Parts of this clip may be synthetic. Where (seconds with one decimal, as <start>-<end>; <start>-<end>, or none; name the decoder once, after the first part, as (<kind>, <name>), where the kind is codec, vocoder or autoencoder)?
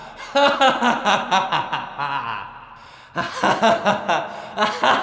none